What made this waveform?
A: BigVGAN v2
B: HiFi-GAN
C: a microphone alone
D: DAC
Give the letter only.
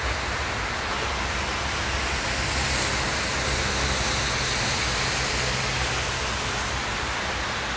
C